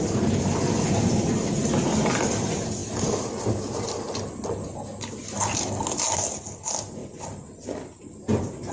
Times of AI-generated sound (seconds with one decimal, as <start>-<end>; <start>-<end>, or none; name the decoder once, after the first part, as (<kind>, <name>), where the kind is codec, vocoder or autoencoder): none